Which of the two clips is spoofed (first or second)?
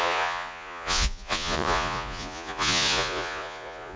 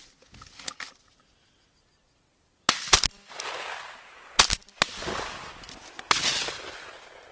first